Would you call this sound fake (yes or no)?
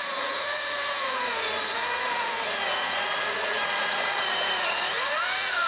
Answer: yes